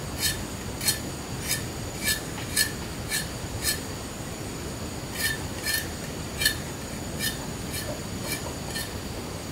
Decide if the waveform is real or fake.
real